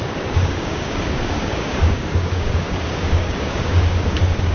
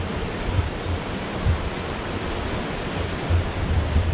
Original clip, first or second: second